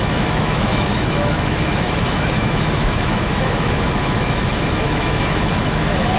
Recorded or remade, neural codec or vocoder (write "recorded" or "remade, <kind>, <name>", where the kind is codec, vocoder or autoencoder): remade, autoencoder, DAC-VAE